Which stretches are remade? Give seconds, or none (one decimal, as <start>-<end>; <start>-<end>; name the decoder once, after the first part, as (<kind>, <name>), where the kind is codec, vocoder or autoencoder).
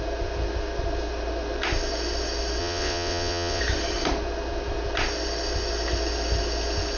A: 2.6-3.6 (vocoder, WaveNeXt)